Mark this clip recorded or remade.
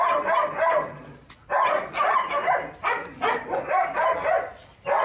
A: recorded